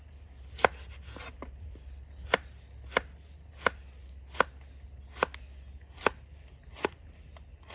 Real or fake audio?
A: real